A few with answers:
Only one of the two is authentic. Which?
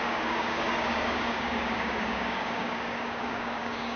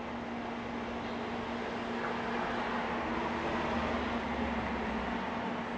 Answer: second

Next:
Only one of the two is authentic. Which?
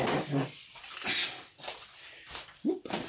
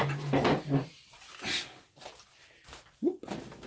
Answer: second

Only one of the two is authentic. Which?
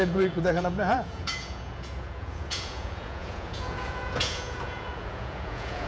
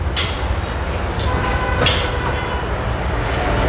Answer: second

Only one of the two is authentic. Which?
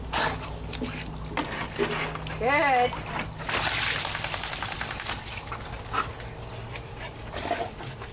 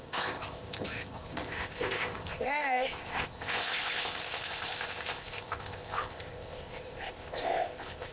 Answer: first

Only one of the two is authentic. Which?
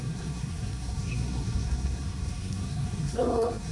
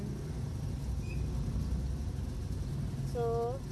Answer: second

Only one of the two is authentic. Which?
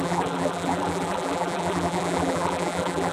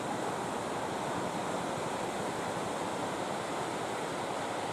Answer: second